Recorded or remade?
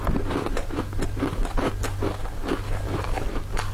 recorded